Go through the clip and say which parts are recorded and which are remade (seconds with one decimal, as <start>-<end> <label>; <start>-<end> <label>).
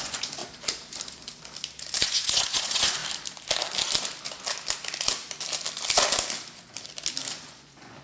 0.0-0.4 remade; 0.4-2.0 recorded; 2.0-3.0 remade; 3.0-7.3 recorded; 7.3-8.0 remade